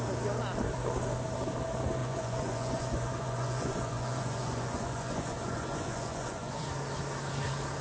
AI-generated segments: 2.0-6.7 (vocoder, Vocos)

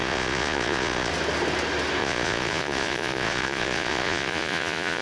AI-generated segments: 0.0-1.1 (vocoder, Vocos); 2.0-5.0